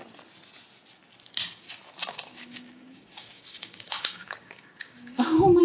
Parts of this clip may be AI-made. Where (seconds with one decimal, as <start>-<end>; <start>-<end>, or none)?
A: 2.1-5.6